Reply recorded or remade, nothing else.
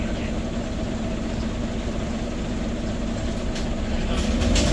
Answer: recorded